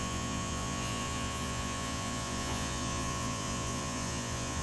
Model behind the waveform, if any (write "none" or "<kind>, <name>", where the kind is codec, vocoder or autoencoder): vocoder, Vocos